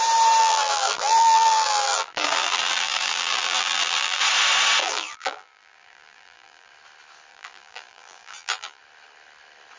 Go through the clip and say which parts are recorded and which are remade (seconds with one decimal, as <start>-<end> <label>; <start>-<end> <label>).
0.0-0.4 recorded; 0.4-4.2 remade; 4.2-4.8 recorded; 4.8-6.7 remade; 6.7-7.3 recorded; 7.3-8.8 remade; 8.8-9.8 recorded